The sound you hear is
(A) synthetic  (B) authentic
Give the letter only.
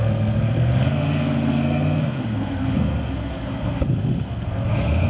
A